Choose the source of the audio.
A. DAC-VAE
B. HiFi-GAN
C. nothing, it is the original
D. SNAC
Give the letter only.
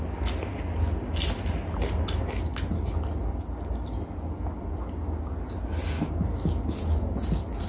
C